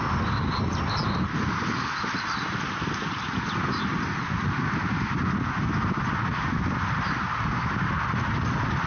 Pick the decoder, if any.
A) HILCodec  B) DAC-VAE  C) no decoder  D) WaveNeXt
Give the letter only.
C